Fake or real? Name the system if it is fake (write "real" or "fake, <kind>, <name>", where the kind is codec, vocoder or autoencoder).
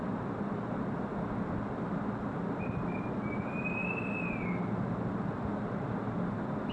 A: real